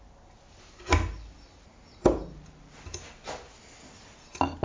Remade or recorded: recorded